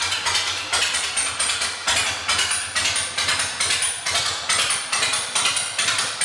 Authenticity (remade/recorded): recorded